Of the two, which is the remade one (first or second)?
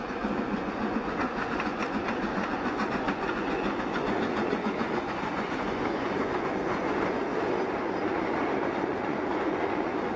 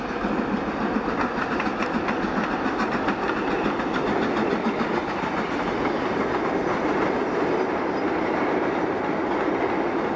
first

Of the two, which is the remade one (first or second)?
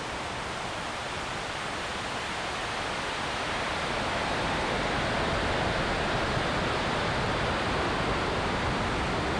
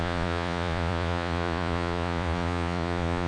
second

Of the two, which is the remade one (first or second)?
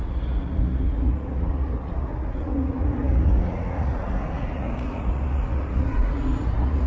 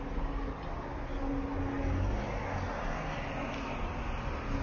first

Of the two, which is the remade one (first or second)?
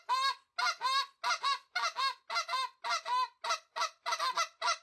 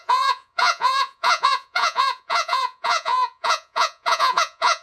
second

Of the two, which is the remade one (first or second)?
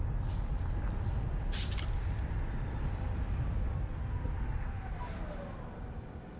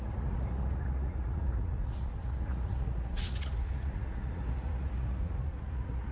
second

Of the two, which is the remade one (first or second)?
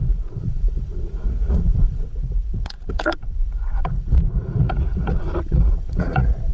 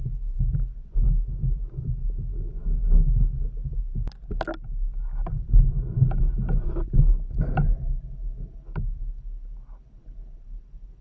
first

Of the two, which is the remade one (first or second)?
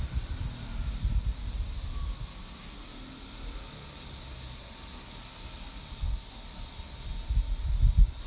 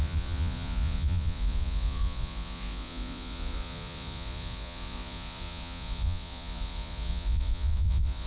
second